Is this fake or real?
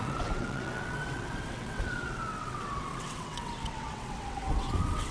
fake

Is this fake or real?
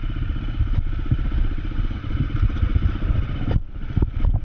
real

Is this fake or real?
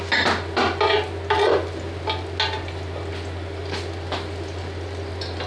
real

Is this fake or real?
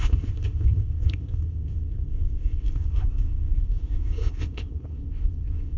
fake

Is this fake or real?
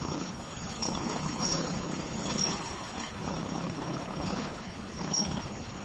fake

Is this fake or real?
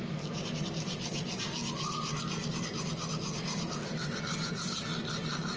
real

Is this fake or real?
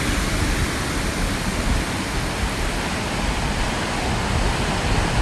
real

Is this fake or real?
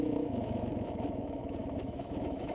fake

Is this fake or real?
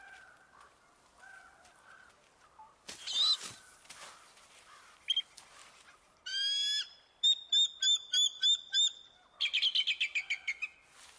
real